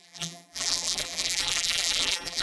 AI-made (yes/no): yes